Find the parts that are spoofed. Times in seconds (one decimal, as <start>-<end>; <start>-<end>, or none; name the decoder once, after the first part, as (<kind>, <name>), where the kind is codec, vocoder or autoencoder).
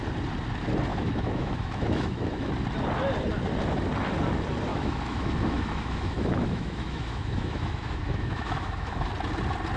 0.9-2.5 (autoencoder, DAC-VAE); 4.7-9.1